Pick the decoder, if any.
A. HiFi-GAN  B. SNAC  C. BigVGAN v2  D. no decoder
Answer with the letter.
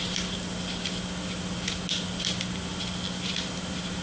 D